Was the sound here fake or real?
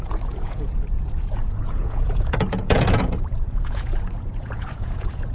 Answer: fake